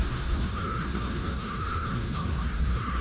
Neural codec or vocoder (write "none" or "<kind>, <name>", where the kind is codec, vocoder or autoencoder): codec, SNAC